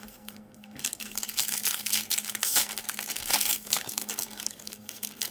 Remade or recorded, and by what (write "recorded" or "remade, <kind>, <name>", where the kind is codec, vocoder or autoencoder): remade, codec, SNAC